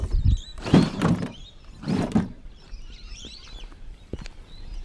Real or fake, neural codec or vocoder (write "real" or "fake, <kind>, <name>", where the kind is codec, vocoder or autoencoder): fake, vocoder, BigVGAN v2